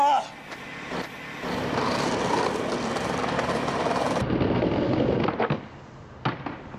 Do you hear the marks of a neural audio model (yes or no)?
no